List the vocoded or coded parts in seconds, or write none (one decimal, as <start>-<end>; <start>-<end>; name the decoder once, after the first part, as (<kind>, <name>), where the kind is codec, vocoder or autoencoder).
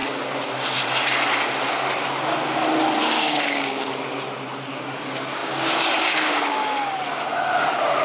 3.0-3.9 (codec, DAC); 4.7-8.0